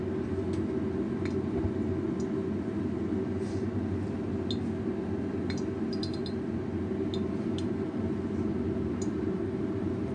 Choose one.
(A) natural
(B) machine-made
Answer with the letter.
A